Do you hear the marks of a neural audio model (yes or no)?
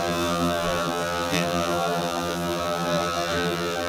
yes